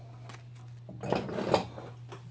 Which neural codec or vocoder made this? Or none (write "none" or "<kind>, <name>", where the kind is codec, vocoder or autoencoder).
none